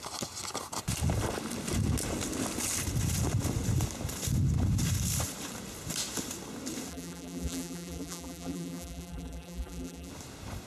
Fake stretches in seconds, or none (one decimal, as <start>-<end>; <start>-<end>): 6.9-10.1